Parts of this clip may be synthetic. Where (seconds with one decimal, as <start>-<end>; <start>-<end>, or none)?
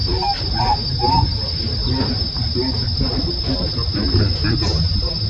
0.5-1.3; 4.5-5.3